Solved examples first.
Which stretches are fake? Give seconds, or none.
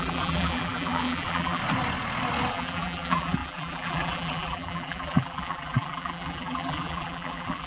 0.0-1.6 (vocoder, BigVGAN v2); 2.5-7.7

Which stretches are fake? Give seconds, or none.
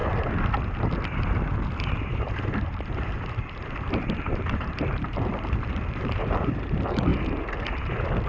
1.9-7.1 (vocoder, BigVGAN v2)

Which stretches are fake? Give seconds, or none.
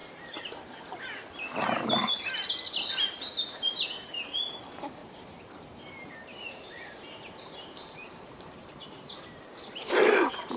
0.0-0.7 (vocoder, BigVGAN v2); 5.0-5.8; 6.3-10.6